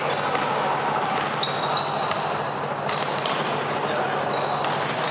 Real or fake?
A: real